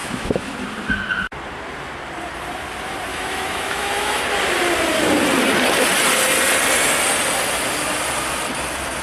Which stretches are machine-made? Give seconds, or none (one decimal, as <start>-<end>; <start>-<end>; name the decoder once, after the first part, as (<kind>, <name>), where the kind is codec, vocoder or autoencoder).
0.0-0.5 (autoencoder, DAC-VAE); 3.1-4.2